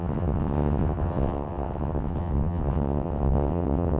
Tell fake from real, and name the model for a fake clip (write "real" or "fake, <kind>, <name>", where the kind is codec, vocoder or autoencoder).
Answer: fake, vocoder, WaveNeXt